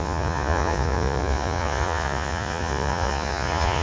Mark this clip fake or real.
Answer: fake